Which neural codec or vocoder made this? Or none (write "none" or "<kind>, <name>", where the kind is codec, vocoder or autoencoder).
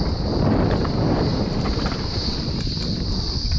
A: none